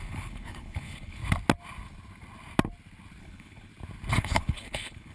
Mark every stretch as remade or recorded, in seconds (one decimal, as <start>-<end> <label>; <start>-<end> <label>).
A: 0.0-1.2 remade; 1.2-3.2 recorded; 3.2-3.7 remade; 3.7-4.2 recorded; 4.2-5.1 remade